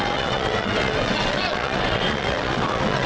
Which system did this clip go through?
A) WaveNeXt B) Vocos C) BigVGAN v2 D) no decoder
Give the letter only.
A